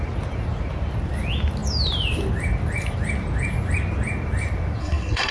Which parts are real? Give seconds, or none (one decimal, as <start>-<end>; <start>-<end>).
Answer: 0.0-4.8